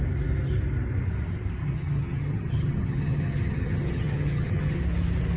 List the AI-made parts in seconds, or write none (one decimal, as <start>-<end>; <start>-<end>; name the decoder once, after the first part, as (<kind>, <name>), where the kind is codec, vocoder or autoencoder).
1.6-4.8 (vocoder, HiFi-GAN)